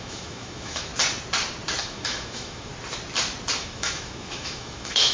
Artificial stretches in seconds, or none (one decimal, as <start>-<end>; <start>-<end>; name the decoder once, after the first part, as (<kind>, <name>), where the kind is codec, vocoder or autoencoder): 0.0-0.9 (autoencoder, DAC-VAE); 1.8-2.7; 3.6-5.1